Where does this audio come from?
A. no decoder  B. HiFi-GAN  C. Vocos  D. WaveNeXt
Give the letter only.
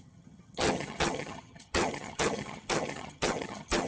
B